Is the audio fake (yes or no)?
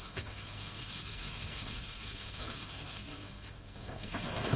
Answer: yes